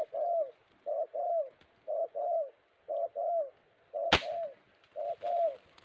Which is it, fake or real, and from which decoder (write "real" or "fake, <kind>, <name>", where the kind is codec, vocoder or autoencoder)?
real